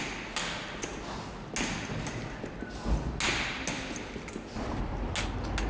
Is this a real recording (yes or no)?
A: yes